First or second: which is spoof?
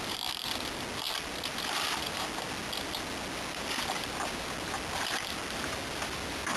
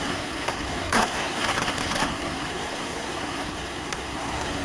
second